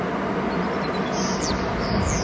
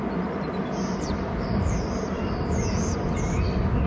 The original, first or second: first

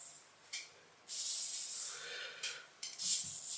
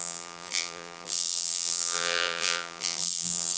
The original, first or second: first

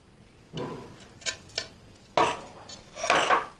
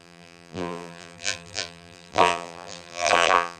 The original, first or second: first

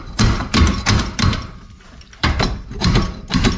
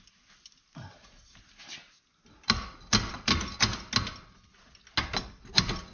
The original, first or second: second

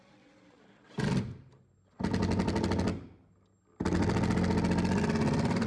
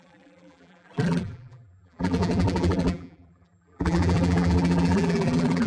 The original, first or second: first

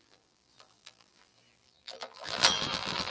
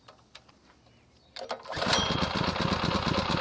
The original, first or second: second